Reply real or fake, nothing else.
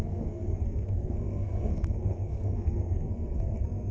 fake